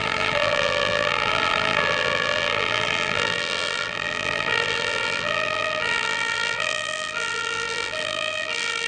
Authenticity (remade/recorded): remade